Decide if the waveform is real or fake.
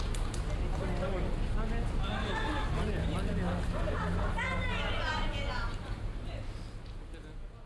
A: real